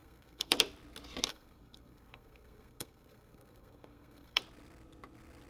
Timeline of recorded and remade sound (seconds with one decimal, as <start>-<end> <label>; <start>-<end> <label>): 0.0-0.5 remade; 0.5-1.3 recorded; 1.3-4.4 remade; 4.4-5.5 recorded